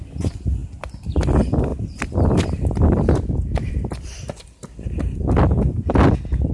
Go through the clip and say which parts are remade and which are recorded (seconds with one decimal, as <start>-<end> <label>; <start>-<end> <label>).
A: 0.0-0.6 recorded; 0.6-1.2 remade; 1.2-1.7 recorded; 1.7-5.5 remade; 5.5-6.5 recorded